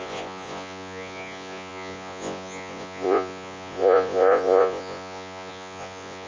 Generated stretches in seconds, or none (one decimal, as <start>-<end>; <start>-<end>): 0.0-6.3